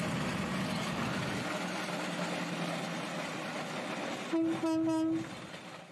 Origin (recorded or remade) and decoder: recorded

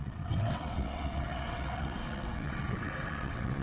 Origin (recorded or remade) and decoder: remade, vocoder, WaveNeXt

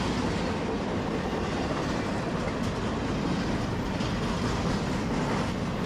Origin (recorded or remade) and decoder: recorded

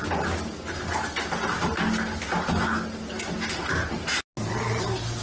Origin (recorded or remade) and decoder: recorded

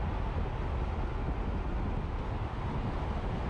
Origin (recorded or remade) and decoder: recorded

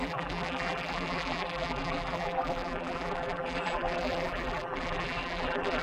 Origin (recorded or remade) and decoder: remade, vocoder, BigVGAN v2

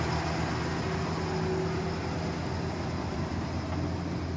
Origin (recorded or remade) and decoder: recorded